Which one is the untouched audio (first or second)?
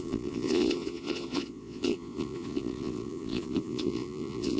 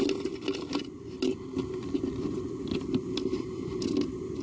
second